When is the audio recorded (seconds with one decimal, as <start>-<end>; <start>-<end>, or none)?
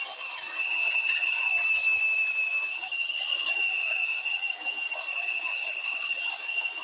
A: 0.0-0.6; 1.5-2.7; 4.5-5.1; 6.3-6.8